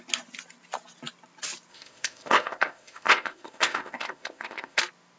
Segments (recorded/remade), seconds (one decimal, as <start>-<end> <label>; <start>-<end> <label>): 0.0-1.7 recorded; 1.7-4.8 remade; 4.8-5.2 recorded